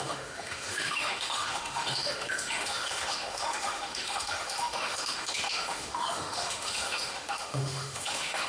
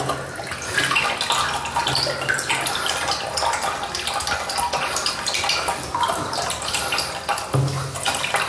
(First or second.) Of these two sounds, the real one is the second